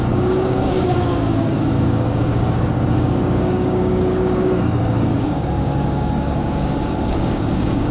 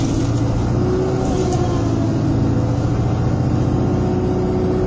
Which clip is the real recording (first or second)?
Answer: second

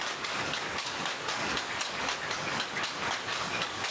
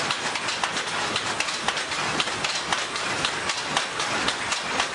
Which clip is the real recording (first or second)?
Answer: second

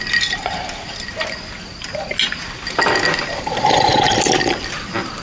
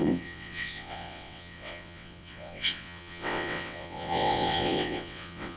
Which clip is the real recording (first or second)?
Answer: first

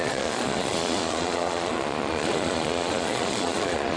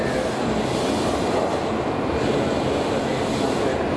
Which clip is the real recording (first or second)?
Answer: second